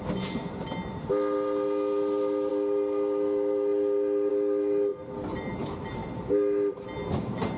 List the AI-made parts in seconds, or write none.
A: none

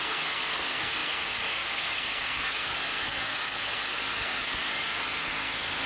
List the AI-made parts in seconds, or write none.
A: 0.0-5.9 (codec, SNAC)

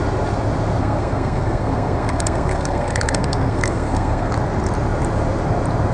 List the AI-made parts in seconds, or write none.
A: 0.8-4.3 (codec, SNAC)

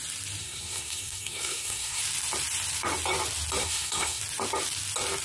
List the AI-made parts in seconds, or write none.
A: 0.4-2.0 (codec, SNAC); 3.6-4.2

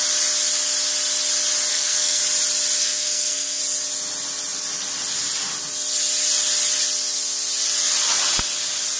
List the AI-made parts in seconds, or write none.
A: 1.7-2.2 (codec, SNAC); 2.8-3.6